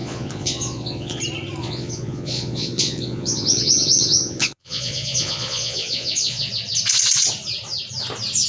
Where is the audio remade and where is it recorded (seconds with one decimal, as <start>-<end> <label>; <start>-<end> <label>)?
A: 0.0-1.2 remade; 1.2-1.6 recorded; 1.6-6.5 remade; 6.5-8.5 recorded